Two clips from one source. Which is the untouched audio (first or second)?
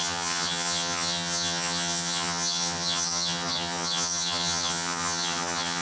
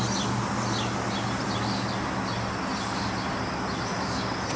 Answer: second